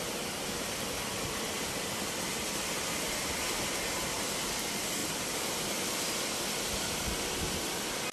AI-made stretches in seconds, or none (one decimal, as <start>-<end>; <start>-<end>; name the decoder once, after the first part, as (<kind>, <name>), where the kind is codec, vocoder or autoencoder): 5.0-7.5 (vocoder, BigVGAN v2)